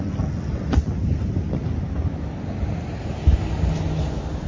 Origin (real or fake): real